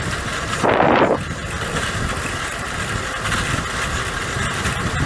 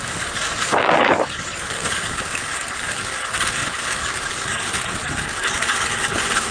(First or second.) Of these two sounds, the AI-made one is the second